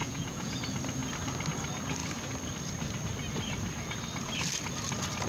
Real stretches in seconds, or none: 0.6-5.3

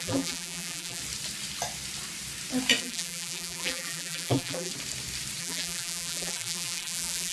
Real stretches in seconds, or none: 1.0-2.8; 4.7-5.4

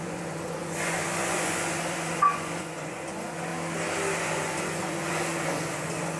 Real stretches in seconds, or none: 3.5-4.2

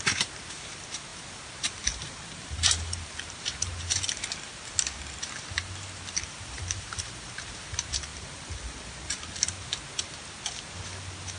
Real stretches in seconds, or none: 8.1-11.4

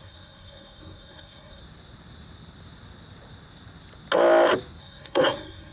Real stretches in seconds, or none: 1.6-4.8

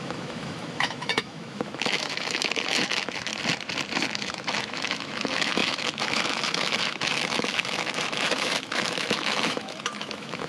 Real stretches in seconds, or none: 3.3-4.0